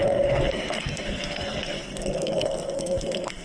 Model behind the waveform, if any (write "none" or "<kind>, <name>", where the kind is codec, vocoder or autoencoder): codec, SNAC